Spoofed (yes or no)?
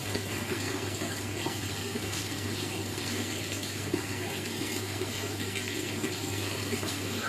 yes